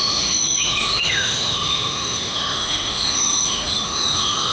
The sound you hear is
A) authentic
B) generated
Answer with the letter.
B